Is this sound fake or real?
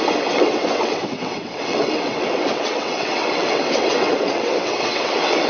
fake